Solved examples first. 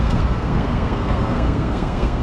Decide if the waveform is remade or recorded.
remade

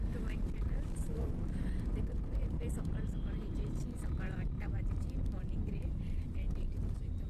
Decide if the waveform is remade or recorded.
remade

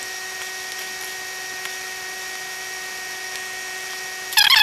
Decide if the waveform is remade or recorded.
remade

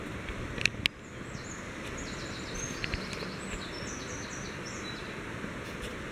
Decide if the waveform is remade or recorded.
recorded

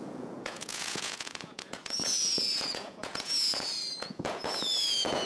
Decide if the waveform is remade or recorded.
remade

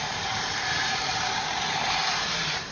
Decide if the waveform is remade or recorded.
remade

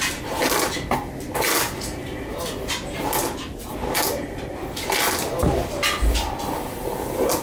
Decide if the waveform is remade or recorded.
recorded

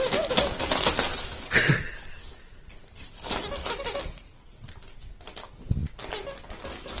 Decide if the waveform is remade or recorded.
recorded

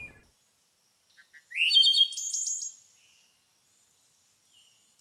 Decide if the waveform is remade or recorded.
recorded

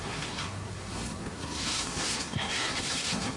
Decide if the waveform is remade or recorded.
remade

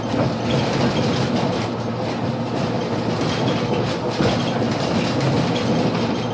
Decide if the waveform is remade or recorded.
recorded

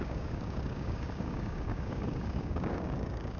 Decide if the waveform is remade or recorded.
remade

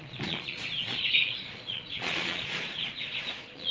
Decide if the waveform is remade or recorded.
remade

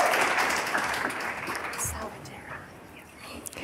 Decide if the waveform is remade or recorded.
remade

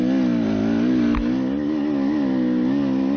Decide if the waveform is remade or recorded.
recorded